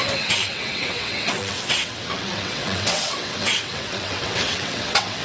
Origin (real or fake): fake